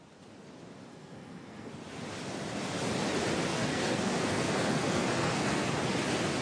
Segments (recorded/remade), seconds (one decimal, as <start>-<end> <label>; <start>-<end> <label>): 0.0-0.9 recorded; 0.9-1.7 remade; 1.7-3.5 recorded; 3.5-5.7 remade; 5.7-6.4 recorded